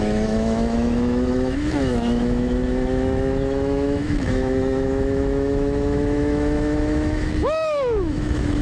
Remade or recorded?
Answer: remade